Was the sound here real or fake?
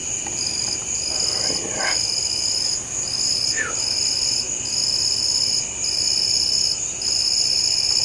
real